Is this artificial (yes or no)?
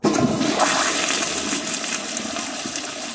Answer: no